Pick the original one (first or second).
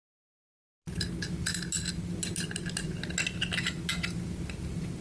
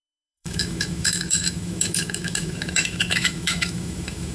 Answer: first